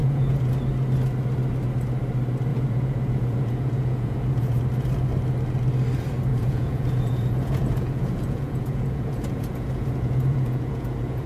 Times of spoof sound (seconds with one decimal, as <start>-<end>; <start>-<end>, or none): 0.0-0.5; 2.5-4.6; 6.3-11.3